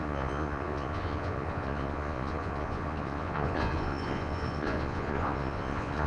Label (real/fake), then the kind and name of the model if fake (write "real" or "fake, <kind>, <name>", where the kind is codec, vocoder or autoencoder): fake, vocoder, Vocos